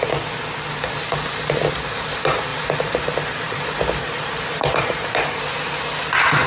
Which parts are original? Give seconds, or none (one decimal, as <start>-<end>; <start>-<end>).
0.0-2.5; 5.4-6.5